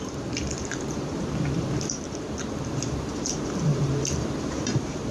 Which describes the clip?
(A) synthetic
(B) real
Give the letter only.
A